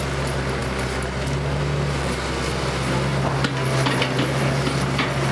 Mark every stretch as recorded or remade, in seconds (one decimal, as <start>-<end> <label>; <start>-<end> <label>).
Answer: 0.0-5.3 recorded